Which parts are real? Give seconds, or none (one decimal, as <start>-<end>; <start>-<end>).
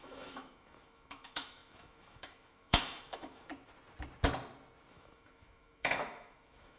3.5-4.9